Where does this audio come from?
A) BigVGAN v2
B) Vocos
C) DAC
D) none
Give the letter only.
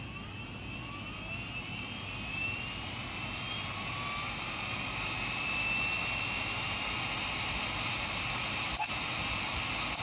D